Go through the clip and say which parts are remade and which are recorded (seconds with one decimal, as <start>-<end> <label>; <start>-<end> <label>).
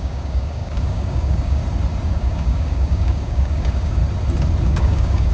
0.0-1.6 remade; 1.6-2.1 recorded; 2.1-4.0 remade; 4.0-4.6 recorded; 4.6-5.3 remade